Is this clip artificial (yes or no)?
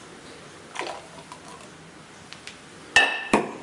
no